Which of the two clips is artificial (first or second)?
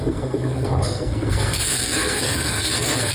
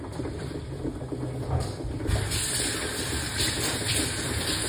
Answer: first